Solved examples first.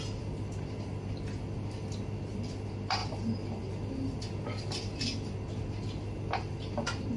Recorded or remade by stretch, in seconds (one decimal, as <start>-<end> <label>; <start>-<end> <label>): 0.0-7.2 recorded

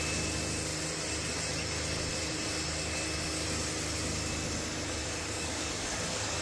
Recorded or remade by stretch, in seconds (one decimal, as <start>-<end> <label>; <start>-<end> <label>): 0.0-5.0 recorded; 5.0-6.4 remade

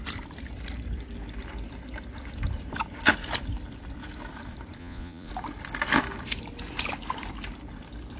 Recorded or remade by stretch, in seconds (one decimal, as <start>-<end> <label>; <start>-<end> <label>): 0.0-4.8 recorded; 4.8-5.3 remade; 5.3-8.2 recorded

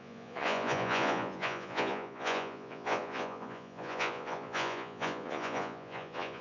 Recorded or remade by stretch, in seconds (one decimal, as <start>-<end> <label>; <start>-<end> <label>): 0.0-6.4 remade

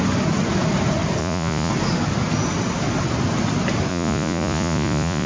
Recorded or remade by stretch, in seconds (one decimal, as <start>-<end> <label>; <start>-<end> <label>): 0.0-1.2 recorded; 1.2-1.7 remade; 1.7-3.9 recorded; 3.9-5.3 remade